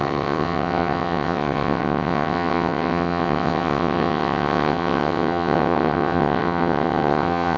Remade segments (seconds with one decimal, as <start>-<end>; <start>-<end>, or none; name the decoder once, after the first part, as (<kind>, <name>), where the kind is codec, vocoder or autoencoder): 0.0-7.6 (vocoder, WaveNeXt)